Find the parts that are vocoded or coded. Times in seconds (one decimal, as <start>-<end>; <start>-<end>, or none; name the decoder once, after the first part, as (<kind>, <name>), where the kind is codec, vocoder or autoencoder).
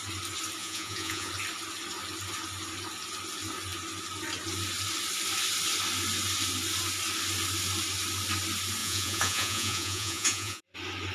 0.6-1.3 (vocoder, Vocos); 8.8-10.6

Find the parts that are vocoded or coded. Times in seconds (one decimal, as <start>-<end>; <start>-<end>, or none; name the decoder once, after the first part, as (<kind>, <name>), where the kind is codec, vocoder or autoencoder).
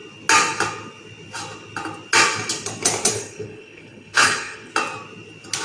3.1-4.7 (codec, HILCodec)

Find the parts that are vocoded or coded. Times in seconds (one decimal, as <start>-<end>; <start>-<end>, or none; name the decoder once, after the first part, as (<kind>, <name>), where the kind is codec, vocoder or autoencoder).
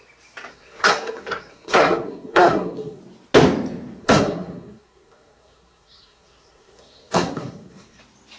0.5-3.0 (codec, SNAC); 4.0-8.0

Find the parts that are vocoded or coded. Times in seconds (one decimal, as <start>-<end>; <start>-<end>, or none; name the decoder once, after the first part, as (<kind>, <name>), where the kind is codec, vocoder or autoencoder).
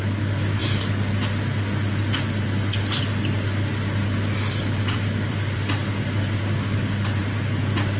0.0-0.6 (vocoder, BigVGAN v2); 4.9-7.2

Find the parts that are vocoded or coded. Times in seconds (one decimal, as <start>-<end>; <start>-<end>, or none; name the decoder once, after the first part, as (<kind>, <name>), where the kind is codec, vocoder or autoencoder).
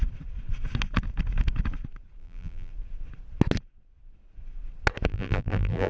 2.2-2.7 (vocoder, BigVGAN v2); 5.1-5.9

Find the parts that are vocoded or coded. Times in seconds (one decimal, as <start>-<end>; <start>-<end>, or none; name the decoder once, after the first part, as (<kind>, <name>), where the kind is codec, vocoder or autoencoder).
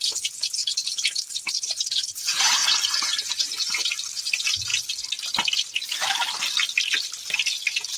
0.0-0.6 (vocoder, BigVGAN v2); 1.2-4.7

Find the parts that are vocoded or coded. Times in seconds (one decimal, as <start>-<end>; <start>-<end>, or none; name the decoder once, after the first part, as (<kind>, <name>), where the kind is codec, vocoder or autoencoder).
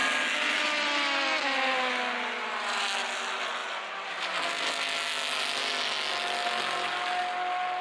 3.6-4.2 (vocoder, BigVGAN v2)